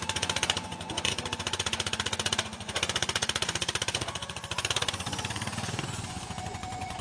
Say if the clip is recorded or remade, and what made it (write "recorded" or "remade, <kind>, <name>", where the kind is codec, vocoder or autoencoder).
remade, vocoder, Vocos